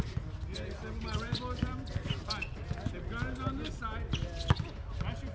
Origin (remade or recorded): recorded